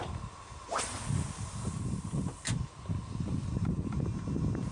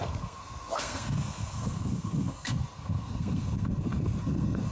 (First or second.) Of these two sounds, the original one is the first